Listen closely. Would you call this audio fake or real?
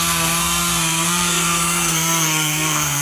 fake